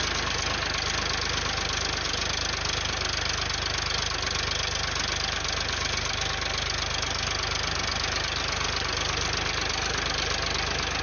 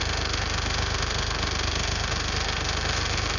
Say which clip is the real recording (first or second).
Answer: first